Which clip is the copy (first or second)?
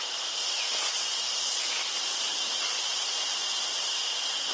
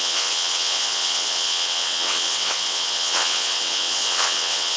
second